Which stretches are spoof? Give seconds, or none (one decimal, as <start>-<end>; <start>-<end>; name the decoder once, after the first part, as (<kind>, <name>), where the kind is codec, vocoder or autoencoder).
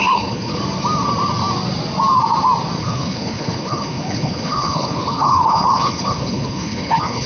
0.0-0.6 (codec, HILCodec); 2.8-7.3